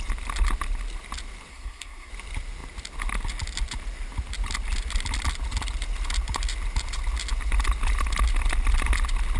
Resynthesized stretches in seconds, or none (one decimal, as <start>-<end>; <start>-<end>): 1.5-2.1